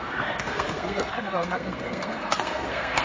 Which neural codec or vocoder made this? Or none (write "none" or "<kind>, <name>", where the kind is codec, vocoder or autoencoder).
codec, SNAC